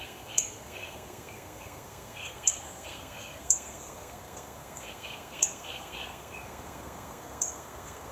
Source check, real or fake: fake